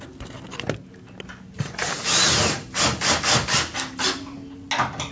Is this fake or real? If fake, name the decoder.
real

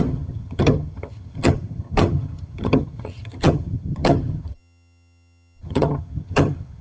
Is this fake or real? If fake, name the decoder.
fake, vocoder, HiFi-GAN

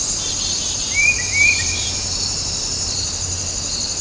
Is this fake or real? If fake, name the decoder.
fake, vocoder, BigVGAN v2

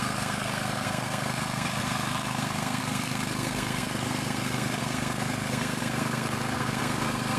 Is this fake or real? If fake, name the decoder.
fake, codec, SNAC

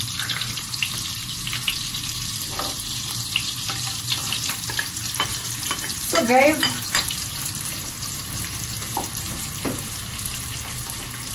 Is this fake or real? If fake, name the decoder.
fake, vocoder, BigVGAN v2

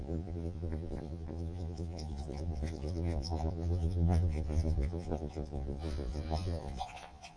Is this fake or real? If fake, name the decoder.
fake, vocoder, Vocos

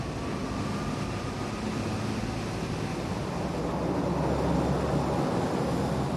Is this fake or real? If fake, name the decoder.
real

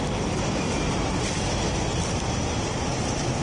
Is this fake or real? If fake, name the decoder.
real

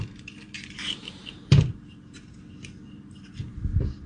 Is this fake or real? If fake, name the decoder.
fake, vocoder, BigVGAN v2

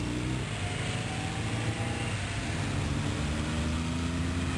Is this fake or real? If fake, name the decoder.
real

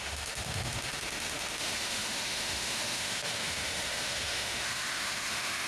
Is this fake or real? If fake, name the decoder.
fake, autoencoder, DAC-VAE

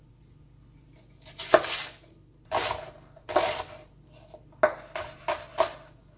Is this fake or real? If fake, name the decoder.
real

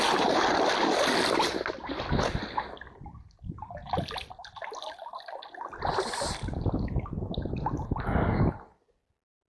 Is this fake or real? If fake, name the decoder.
real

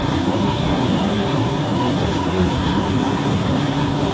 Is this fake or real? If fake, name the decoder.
fake, codec, SNAC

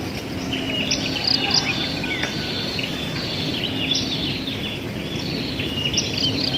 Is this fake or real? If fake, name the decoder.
real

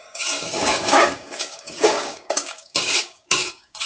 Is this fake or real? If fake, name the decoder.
fake, codec, DAC